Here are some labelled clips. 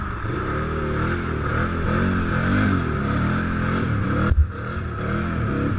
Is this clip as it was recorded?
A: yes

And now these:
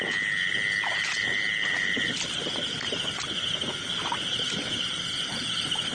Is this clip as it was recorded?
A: yes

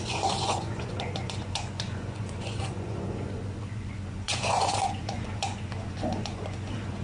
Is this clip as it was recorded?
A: no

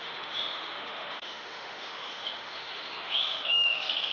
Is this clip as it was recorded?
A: no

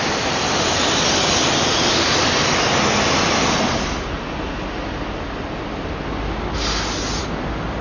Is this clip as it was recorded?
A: yes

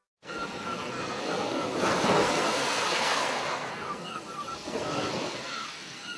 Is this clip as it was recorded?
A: no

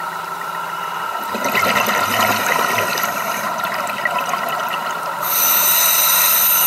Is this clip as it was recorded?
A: yes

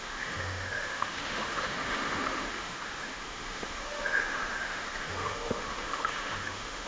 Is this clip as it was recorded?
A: no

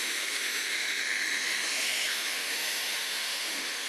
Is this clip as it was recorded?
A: no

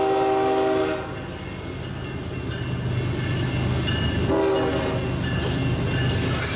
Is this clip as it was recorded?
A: yes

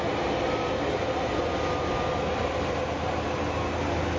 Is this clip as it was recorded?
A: yes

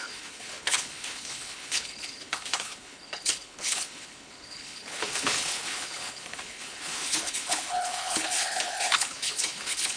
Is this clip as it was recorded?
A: no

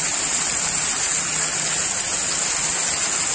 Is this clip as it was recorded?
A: yes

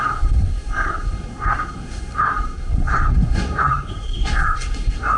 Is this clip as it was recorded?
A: no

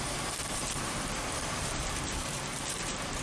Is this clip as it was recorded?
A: no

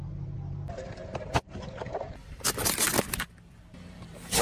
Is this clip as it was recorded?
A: yes